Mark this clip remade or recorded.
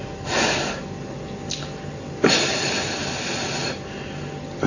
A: recorded